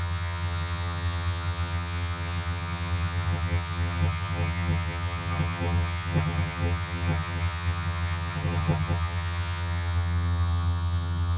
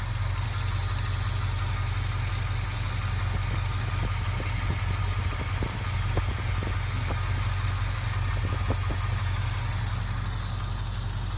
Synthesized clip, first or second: first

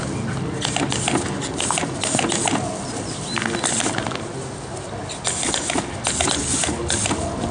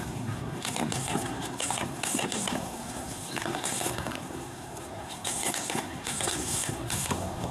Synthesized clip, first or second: second